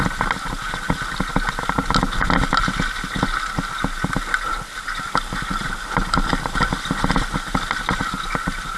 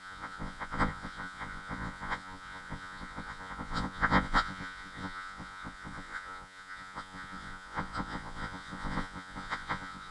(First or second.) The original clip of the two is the first